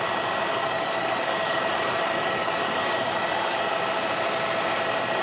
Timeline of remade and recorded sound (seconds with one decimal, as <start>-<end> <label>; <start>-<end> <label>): 0.0-0.6 recorded; 0.6-3.6 remade; 3.6-5.2 recorded